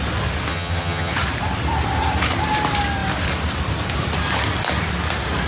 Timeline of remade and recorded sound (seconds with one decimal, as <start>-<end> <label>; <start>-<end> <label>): 0.0-0.5 recorded; 0.5-1.1 remade; 1.1-5.5 recorded